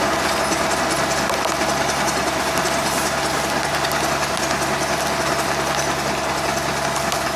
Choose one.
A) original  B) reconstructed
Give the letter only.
A